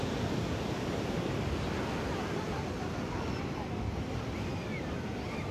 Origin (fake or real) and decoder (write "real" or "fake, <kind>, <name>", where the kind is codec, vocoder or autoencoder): real